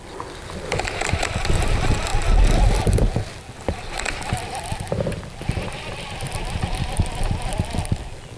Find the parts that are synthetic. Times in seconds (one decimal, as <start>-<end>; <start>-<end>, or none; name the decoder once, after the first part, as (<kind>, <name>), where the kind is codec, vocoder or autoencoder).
none